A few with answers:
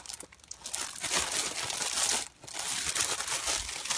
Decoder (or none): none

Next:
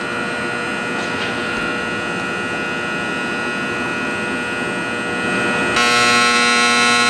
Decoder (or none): none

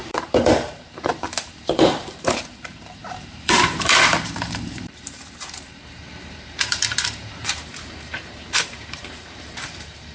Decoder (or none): vocoder, BigVGAN v2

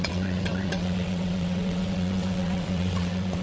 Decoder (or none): vocoder, WaveNeXt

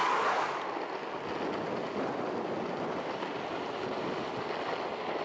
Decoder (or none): none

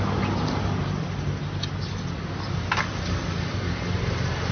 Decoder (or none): none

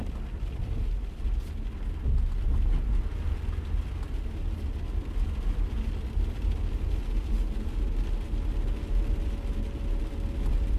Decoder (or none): none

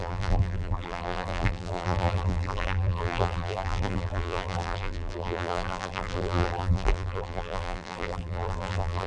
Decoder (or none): vocoder, BigVGAN v2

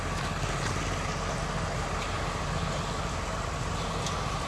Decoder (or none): none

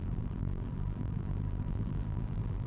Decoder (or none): vocoder, BigVGAN v2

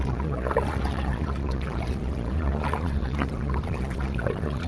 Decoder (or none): vocoder, Vocos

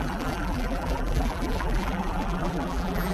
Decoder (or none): vocoder, BigVGAN v2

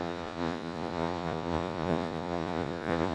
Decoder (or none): vocoder, Vocos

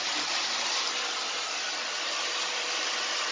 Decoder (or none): none